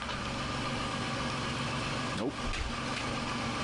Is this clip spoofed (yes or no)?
no